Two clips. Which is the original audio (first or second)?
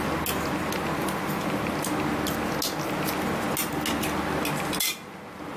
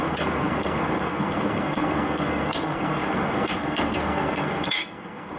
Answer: first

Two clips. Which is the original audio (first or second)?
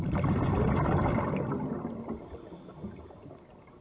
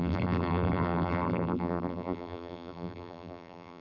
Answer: first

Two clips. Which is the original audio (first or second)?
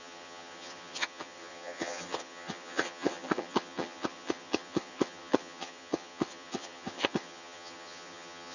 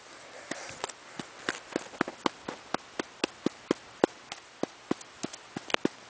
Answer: second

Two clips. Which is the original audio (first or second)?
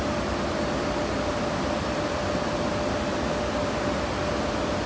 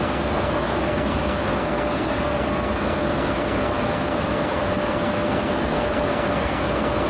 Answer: first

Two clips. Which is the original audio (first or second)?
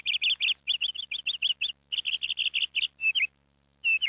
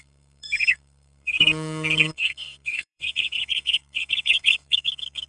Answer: first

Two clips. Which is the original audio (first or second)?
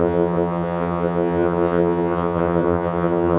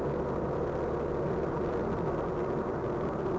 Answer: second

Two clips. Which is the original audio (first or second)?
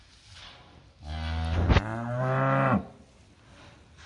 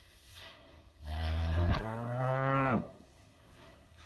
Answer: first